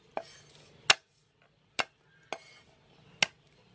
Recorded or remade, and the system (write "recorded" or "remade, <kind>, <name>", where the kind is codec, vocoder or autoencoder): recorded